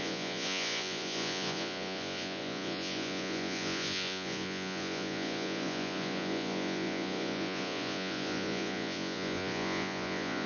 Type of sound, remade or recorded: remade